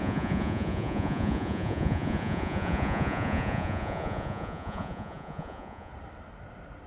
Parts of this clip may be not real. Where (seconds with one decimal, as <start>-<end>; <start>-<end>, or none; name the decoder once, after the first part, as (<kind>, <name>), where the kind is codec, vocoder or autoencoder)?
0.0-5.9 (vocoder, Vocos)